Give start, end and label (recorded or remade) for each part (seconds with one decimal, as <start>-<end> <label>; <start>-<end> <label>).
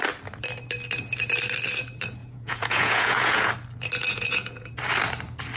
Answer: 0.0-2.2 recorded; 2.2-3.5 remade; 3.5-4.1 recorded; 4.1-4.7 remade; 4.7-5.6 recorded